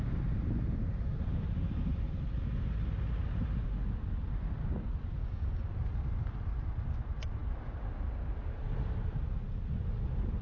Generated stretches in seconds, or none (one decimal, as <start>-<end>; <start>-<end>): 5.2-5.7